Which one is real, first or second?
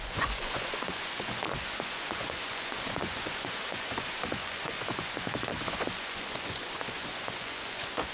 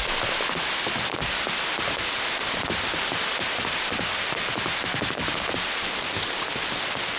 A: second